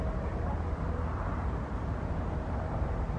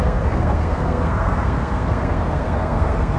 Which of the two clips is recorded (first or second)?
first